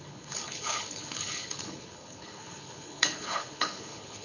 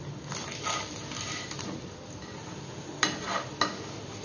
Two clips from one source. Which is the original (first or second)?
second